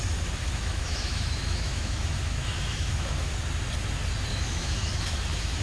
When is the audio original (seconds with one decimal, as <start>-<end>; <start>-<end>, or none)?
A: 0.0-0.4; 3.3-4.3